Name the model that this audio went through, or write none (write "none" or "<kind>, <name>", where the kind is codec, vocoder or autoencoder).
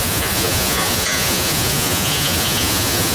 vocoder, Vocos